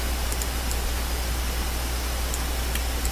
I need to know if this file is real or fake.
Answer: real